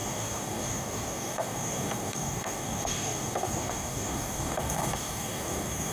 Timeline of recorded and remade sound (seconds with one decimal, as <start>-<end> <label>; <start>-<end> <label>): 0.0-5.9 remade